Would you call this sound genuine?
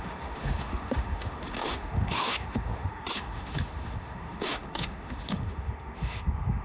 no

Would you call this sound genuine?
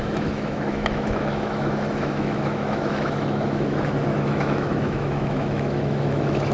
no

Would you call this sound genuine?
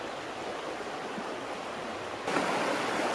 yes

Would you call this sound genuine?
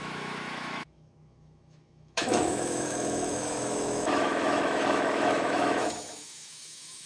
no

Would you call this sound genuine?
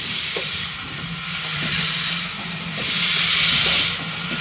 yes